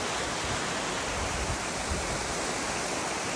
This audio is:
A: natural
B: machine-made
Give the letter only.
A